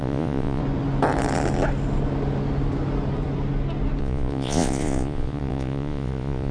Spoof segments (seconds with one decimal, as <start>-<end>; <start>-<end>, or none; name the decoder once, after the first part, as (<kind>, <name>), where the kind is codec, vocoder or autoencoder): 0.0-0.6 (vocoder, Vocos); 4.0-6.5